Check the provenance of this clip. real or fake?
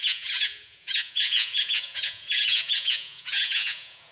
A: fake